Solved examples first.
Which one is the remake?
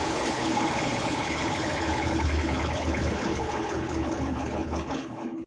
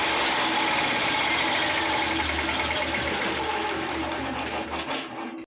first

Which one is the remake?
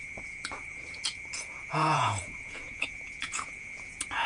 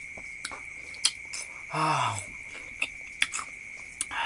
first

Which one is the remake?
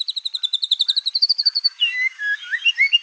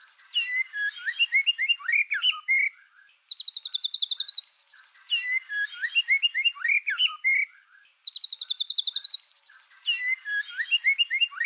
first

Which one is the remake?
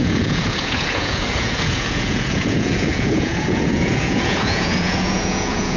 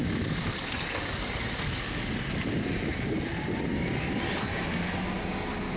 first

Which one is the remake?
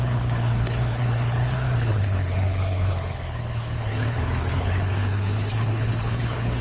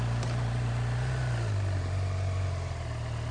first